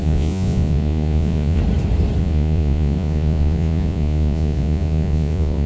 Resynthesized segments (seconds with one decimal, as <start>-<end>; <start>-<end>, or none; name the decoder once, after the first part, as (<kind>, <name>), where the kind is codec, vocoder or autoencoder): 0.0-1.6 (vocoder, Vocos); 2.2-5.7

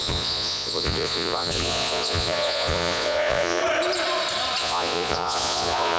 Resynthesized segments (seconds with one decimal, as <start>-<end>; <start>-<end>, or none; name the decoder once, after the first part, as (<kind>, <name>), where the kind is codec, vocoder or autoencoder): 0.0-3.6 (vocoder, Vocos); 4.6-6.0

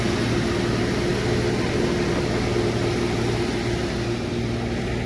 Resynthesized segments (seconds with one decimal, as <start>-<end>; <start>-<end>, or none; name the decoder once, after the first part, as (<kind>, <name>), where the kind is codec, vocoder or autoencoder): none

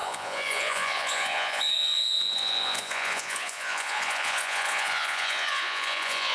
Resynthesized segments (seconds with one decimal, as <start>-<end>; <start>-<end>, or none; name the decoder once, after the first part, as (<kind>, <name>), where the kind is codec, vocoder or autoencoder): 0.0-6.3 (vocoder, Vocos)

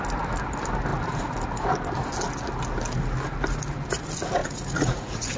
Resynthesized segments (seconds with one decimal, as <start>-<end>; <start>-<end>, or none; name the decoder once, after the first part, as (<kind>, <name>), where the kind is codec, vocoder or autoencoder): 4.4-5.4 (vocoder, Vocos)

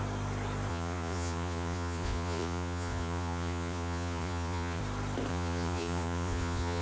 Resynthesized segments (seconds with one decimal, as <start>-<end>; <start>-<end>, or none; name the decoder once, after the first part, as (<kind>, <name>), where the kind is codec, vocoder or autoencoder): 0.7-4.8 (vocoder, Vocos); 5.3-6.8